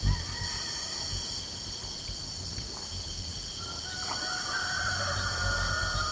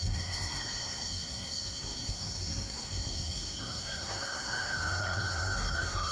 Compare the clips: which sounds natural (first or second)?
first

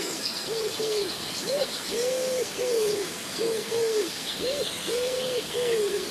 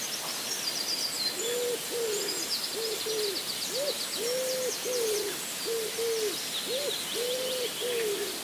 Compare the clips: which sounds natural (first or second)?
second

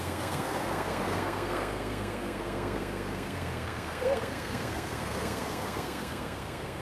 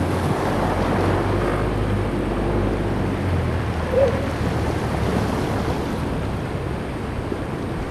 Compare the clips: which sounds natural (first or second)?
second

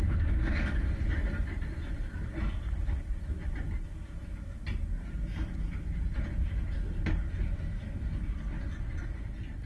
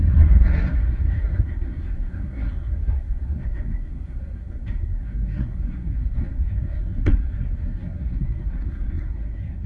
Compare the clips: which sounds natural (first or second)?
first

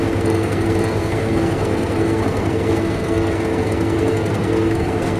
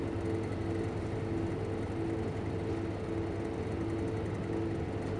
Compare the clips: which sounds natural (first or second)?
second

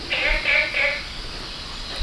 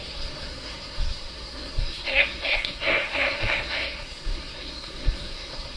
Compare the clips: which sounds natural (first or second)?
first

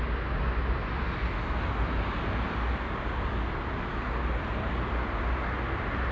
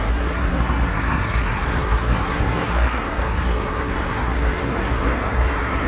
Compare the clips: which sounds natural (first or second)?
first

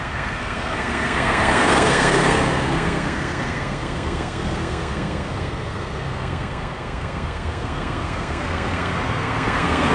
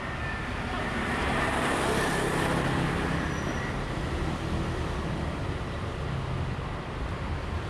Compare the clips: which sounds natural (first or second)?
second